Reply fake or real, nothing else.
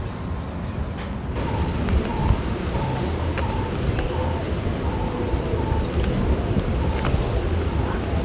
real